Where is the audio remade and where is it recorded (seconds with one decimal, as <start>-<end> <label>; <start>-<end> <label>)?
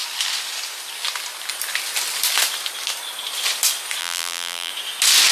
0.0-4.0 recorded; 4.0-4.7 remade; 4.7-5.3 recorded